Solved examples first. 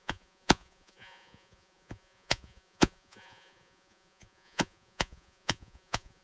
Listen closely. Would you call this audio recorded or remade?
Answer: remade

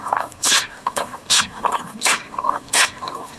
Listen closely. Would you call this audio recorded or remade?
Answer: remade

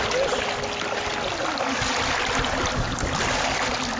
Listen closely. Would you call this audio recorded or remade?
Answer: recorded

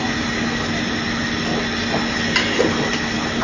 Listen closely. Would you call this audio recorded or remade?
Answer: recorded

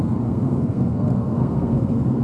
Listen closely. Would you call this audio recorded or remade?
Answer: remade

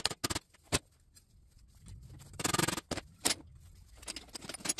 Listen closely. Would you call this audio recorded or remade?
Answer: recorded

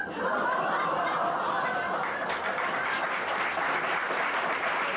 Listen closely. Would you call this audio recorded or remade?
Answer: recorded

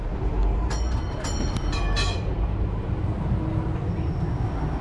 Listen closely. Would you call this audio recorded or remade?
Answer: recorded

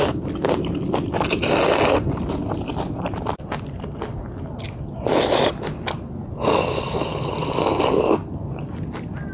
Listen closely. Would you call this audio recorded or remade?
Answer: recorded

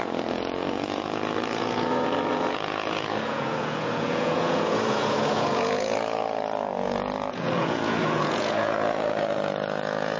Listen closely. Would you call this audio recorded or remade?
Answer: remade